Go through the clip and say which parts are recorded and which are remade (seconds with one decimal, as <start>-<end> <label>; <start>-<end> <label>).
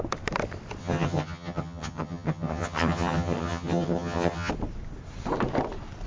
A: 0.0-0.8 recorded; 0.8-4.5 remade; 4.5-6.1 recorded